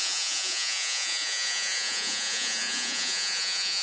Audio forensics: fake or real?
fake